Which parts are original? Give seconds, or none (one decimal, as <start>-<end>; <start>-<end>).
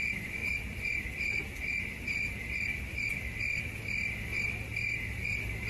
0.0-5.7